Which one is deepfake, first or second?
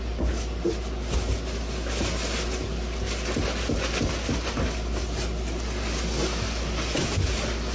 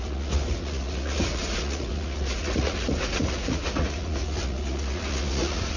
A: second